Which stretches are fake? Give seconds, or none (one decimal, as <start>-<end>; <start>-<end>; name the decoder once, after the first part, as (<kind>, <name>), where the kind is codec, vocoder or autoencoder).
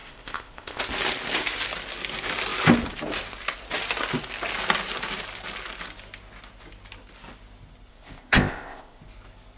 0.0-0.8 (codec, ZipCodec); 7.9-9.0